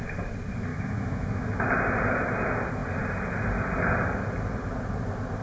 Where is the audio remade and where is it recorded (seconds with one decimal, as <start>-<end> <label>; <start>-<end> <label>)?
0.0-0.7 recorded; 0.7-1.7 remade; 1.7-5.4 recorded